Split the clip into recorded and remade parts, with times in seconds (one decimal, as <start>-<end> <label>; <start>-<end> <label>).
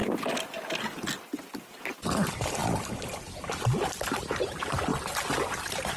0.0-2.0 recorded; 2.0-4.9 remade; 4.9-6.0 recorded